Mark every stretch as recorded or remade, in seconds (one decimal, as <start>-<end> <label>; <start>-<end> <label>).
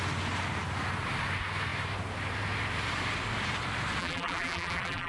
0.0-4.0 recorded; 4.0-5.1 remade